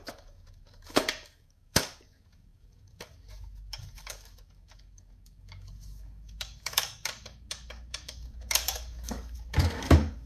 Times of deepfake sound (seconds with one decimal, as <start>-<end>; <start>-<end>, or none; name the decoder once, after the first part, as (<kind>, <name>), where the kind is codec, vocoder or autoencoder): 0.0-10.3 (codec, DAC)